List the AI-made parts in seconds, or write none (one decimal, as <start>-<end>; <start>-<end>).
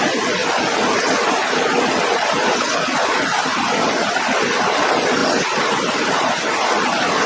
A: none